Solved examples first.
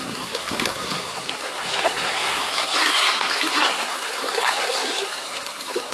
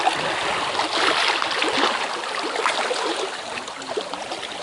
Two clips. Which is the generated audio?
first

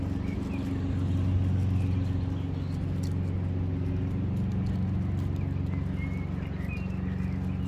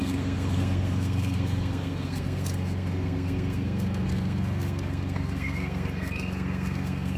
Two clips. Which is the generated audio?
second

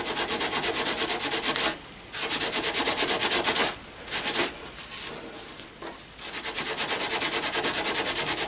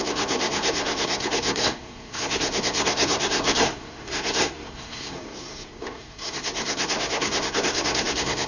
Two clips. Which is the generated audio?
second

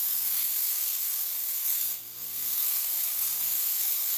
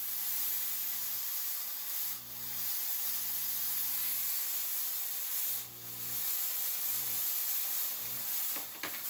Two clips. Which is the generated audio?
first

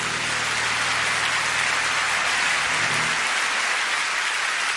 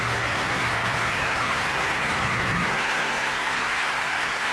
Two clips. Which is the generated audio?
second